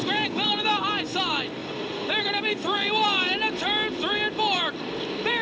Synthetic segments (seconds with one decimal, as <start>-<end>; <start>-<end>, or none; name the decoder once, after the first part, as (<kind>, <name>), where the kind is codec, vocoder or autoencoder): 0.0-5.4 (vocoder, BigVGAN v2)